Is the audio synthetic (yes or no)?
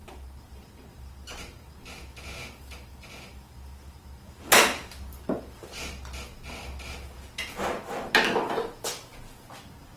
no